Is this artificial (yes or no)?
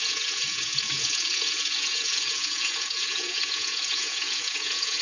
yes